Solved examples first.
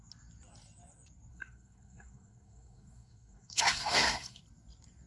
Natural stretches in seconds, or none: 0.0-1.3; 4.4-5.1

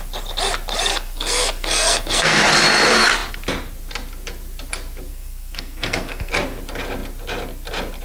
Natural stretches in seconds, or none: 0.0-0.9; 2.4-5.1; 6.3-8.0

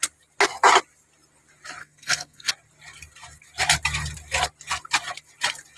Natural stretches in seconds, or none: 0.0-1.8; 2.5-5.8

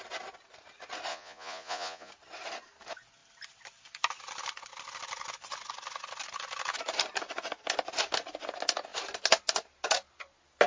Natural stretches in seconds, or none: 0.0-1.1; 2.1-10.7

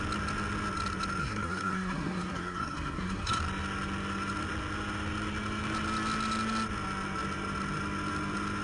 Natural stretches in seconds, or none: 0.0-1.2; 3.4-8.6

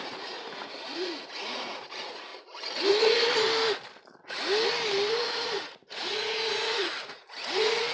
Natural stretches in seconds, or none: 2.3-5.1

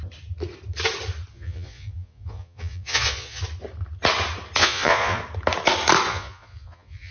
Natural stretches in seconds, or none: 0.0-1.3; 3.4-4.6; 5.2-6.1

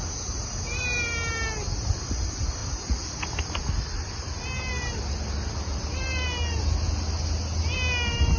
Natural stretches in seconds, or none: 0.0-8.4